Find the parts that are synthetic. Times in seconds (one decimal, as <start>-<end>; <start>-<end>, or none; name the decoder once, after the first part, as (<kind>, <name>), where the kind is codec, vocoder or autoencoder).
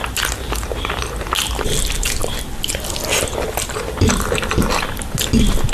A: none